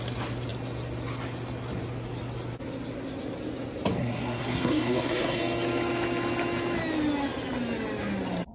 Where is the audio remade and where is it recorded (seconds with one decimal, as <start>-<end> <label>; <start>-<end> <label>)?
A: 0.0-4.0 recorded; 4.0-5.4 remade; 5.4-8.5 recorded